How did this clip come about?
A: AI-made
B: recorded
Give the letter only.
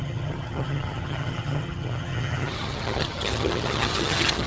A